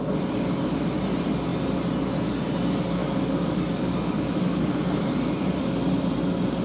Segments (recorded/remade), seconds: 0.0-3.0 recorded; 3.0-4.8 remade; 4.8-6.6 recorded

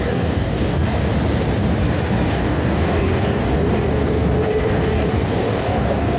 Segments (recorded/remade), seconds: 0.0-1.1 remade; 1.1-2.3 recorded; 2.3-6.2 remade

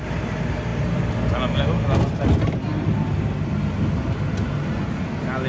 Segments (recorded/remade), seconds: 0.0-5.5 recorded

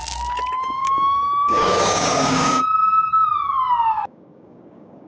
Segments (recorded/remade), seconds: 0.0-0.6 recorded; 0.6-5.1 remade